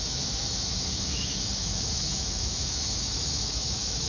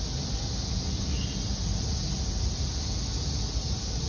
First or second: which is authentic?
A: second